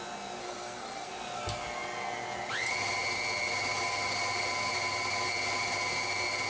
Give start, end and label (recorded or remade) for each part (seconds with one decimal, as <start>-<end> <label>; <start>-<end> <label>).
0.0-0.4 recorded; 0.4-1.1 remade; 1.1-6.5 recorded